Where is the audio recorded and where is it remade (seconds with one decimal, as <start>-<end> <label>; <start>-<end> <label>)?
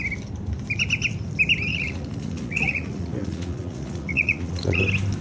0.0-1.7 recorded; 1.7-4.8 remade; 4.8-5.2 recorded